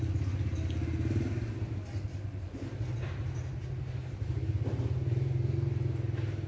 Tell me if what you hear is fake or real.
real